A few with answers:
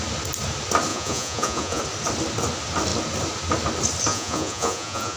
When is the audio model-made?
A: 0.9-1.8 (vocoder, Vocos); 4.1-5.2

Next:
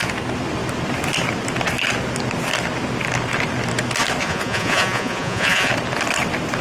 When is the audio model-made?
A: 4.2-5.7 (vocoder, Vocos)

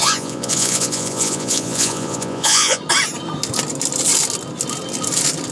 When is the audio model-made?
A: 0.0-2.8 (vocoder, Vocos)

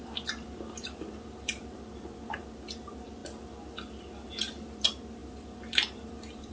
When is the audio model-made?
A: none